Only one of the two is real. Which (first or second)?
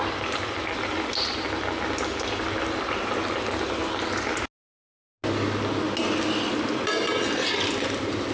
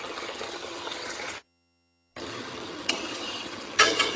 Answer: first